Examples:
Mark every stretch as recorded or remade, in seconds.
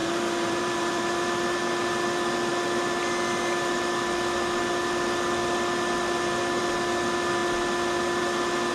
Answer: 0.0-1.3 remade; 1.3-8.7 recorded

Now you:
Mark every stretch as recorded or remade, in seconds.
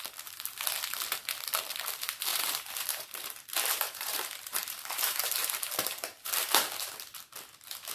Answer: 0.0-2.3 recorded; 2.3-6.3 remade; 6.3-7.9 recorded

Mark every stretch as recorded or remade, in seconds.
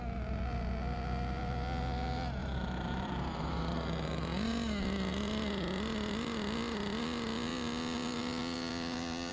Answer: 0.0-2.4 recorded; 2.4-3.6 remade; 3.6-9.3 recorded